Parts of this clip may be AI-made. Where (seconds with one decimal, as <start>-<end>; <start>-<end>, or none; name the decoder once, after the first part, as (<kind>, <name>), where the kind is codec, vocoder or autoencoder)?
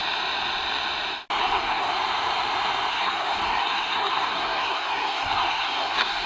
1.4-1.9 (codec, SNAC); 2.9-6.3